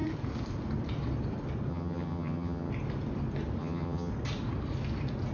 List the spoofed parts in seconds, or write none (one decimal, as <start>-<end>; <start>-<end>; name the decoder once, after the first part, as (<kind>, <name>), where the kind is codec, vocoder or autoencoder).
1.7-2.7 (vocoder, HiFi-GAN); 3.6-4.1